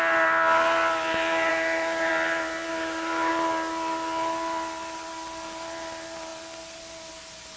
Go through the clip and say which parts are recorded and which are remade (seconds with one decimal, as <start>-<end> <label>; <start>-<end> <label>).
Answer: 0.0-1.5 recorded; 1.5-2.1 remade; 2.1-2.7 recorded; 2.7-3.3 remade; 3.3-7.6 recorded